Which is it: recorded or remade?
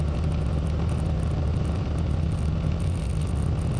recorded